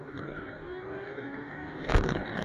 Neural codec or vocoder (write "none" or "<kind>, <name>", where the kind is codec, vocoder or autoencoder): codec, DAC